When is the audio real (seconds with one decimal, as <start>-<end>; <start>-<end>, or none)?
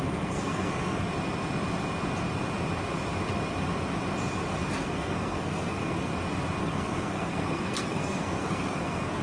1.1-4.8; 6.1-6.6